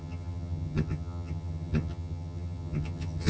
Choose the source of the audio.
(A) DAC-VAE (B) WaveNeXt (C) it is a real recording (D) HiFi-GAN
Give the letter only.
D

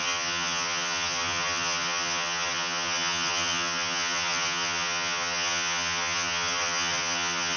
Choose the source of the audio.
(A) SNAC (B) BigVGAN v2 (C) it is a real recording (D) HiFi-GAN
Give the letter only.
D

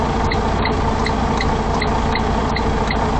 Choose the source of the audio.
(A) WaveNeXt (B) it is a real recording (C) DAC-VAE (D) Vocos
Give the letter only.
B